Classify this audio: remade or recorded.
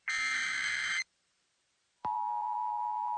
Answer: remade